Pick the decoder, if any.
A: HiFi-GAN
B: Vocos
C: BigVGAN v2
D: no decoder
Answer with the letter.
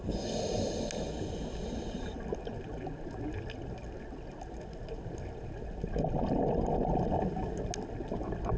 D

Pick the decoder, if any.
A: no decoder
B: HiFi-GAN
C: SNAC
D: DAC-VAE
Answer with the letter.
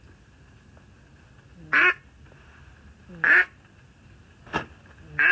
A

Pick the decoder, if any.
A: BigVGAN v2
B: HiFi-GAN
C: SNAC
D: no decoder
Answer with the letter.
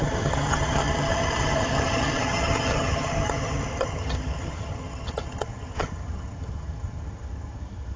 B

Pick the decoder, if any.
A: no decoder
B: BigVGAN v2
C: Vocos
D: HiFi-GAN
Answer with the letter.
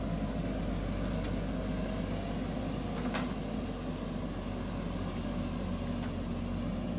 A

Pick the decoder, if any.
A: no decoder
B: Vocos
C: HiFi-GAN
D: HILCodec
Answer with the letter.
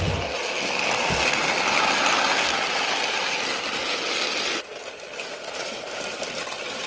A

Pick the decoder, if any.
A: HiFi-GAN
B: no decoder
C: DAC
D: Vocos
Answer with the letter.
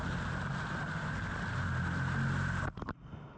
B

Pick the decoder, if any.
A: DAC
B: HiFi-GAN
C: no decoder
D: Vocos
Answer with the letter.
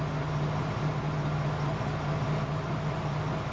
C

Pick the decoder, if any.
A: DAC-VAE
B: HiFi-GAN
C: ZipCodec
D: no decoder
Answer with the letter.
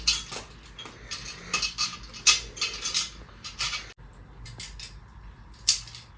D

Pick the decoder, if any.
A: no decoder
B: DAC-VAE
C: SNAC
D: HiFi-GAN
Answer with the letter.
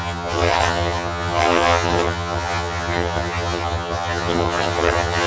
D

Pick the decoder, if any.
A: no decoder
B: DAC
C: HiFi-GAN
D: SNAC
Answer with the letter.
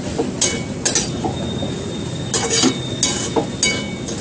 A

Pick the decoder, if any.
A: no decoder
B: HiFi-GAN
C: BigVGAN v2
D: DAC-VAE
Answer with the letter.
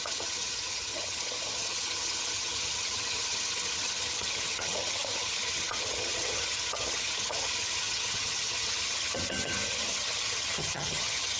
B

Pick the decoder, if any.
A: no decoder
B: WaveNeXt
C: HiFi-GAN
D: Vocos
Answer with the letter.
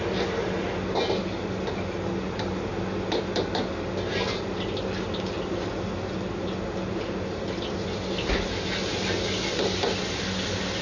A